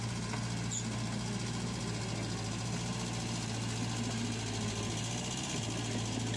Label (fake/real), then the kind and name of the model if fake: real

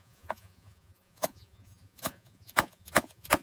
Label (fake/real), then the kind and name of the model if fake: fake, vocoder, Vocos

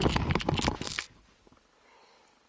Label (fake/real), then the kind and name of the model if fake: real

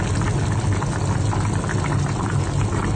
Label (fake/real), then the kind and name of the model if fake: real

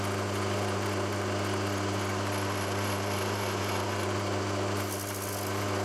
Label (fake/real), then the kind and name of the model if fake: real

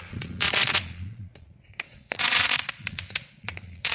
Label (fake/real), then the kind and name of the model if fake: fake, vocoder, Vocos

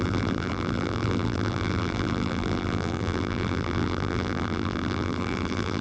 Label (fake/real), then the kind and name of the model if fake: fake, vocoder, BigVGAN v2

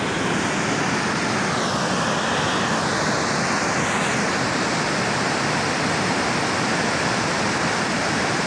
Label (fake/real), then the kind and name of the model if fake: real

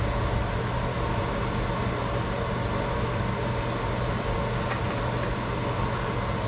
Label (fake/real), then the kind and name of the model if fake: real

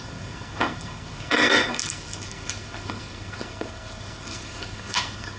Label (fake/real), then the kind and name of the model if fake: fake, codec, SNAC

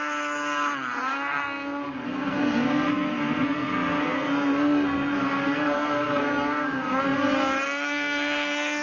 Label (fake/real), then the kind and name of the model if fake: fake, codec, SNAC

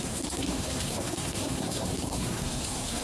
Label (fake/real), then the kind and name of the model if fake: fake, codec, SNAC